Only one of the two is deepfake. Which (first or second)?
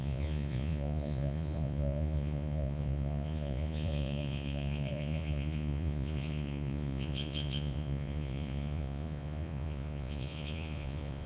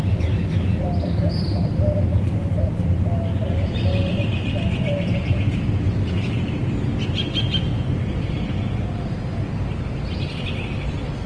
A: first